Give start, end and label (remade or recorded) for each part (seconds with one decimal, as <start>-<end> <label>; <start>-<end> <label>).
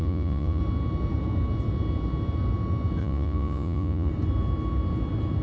0.0-0.6 remade; 0.6-3.0 recorded; 3.0-4.1 remade; 4.1-5.4 recorded